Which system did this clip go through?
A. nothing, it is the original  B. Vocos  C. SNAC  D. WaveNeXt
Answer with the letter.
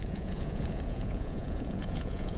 B